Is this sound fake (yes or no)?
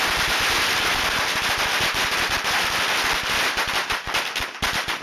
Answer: no